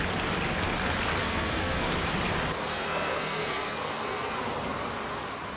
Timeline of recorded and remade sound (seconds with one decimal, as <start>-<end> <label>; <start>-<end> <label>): 0.0-1.2 recorded; 1.2-1.9 remade; 1.9-2.7 recorded; 2.7-4.4 remade; 4.4-5.6 recorded